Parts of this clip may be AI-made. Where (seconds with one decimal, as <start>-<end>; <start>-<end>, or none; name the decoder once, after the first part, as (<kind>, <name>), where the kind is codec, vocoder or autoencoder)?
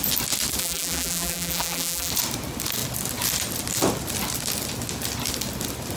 0.6-2.1 (vocoder, BigVGAN v2)